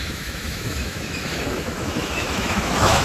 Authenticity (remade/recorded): remade